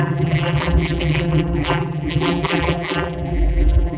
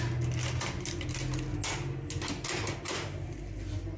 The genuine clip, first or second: second